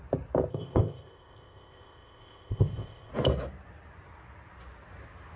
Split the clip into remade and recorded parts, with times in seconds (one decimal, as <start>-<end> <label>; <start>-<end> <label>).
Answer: 0.0-0.5 recorded; 0.5-3.1 remade; 3.1-5.4 recorded